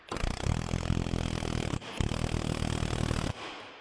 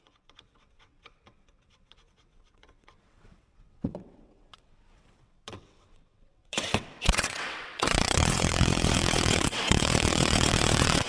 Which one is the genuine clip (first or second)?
first